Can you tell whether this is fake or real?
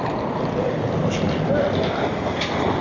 real